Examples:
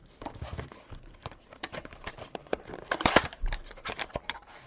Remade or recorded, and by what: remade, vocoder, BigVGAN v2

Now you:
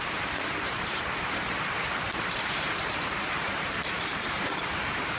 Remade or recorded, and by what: remade, vocoder, BigVGAN v2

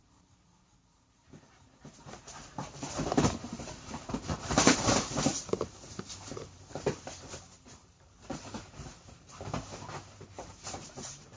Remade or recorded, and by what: remade, vocoder, BigVGAN v2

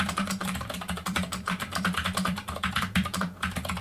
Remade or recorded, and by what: remade, vocoder, BigVGAN v2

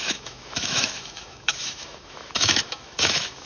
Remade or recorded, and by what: remade, autoencoder, DAC-VAE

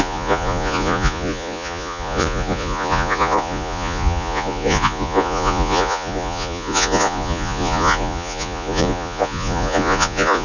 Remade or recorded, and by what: remade, vocoder, Vocos